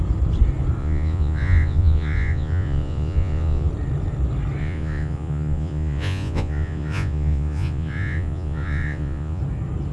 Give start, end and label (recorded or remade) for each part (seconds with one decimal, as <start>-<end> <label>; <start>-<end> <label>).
0.0-0.8 recorded; 0.8-3.7 remade; 3.7-4.6 recorded; 4.6-9.4 remade; 9.4-9.9 recorded